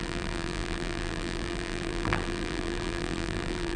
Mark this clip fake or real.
fake